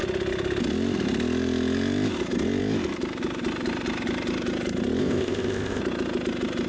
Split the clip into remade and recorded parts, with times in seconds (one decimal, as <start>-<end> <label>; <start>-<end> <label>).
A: 0.0-5.0 recorded; 5.0-5.8 remade; 5.8-6.7 recorded